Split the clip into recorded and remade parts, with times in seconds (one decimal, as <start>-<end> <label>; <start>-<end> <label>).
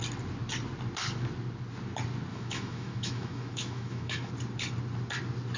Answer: 0.0-2.3 recorded; 2.3-4.3 remade; 4.3-5.6 recorded